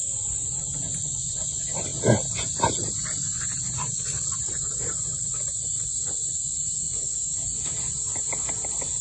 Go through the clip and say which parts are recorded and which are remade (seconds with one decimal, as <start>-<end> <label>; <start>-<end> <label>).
0.0-9.0 recorded